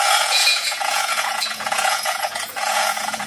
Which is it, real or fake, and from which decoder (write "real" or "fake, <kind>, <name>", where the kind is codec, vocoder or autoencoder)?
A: fake, vocoder, Vocos